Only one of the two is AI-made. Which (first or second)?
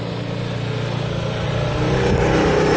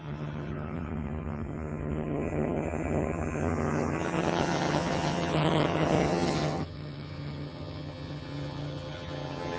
second